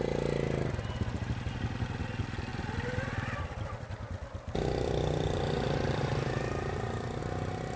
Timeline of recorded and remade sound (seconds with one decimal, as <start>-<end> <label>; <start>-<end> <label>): 0.0-2.5 recorded; 2.5-7.2 remade; 7.2-7.8 recorded